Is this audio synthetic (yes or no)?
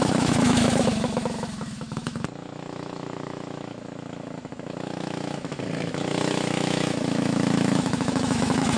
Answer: yes